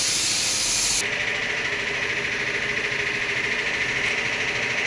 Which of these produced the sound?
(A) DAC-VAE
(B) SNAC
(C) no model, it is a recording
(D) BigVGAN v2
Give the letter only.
C